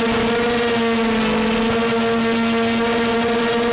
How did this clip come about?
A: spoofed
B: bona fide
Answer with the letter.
B